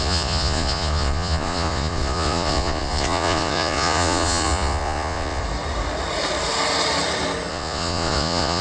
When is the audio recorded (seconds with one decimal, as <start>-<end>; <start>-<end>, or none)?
5.4-7.5